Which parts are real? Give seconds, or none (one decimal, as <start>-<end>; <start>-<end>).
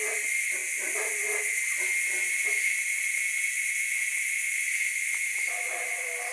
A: 0.0-6.3